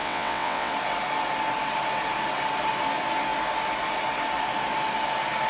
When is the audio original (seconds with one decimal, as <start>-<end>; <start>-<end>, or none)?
0.7-5.5